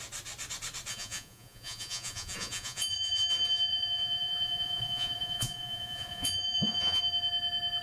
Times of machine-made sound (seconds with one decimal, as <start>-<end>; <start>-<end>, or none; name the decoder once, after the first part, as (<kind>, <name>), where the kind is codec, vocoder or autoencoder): 0.9-3.2 (vocoder, Vocos); 3.7-7.0